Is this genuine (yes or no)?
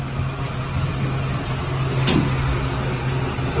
yes